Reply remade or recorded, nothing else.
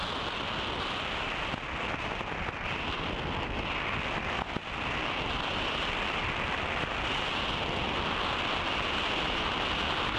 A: recorded